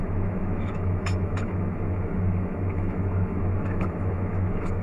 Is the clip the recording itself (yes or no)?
no